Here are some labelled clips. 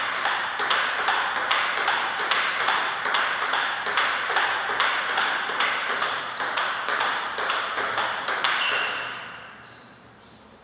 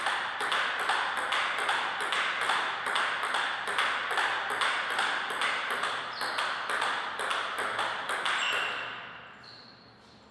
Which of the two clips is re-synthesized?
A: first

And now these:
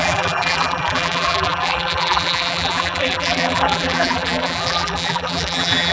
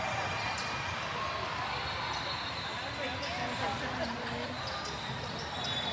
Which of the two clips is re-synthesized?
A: first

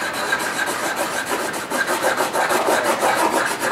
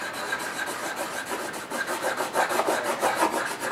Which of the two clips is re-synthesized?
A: first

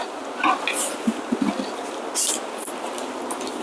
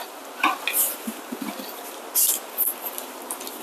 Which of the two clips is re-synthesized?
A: second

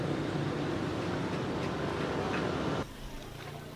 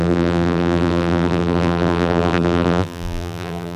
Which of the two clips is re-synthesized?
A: second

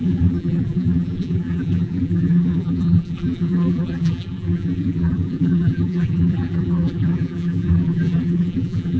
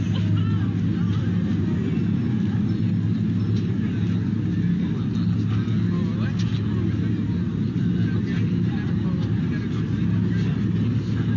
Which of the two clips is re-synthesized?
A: first